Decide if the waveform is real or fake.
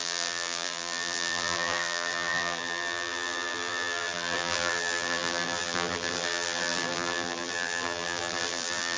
fake